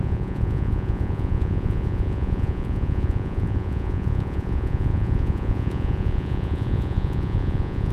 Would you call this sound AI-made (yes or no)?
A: yes